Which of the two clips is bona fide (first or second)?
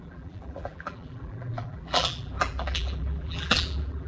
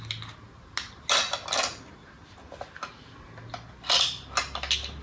second